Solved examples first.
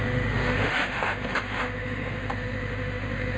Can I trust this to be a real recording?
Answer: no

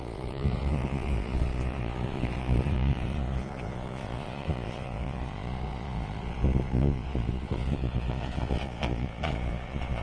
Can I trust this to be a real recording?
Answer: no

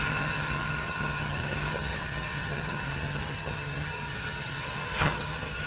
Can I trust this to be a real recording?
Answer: no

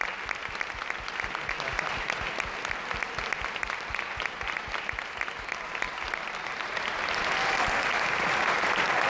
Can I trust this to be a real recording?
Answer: yes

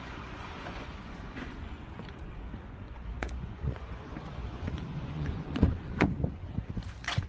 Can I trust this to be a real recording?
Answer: no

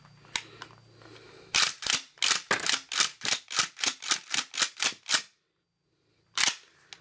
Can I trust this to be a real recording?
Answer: yes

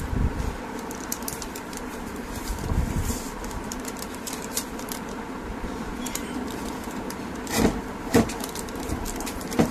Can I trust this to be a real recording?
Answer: no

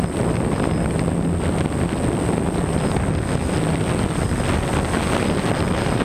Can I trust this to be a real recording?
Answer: yes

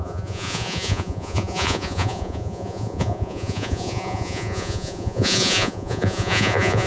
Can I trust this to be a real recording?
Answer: no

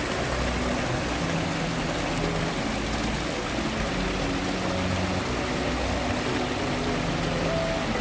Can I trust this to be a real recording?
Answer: yes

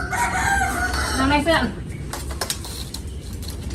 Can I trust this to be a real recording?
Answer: yes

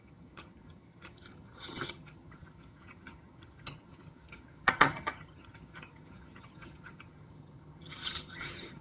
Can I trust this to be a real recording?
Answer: no